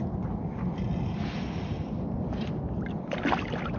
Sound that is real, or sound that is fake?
real